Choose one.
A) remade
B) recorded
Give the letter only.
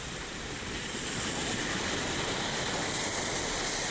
B